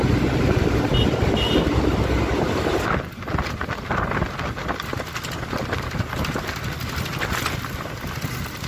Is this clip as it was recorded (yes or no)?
yes